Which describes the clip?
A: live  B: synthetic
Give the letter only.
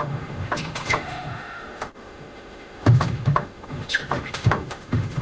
B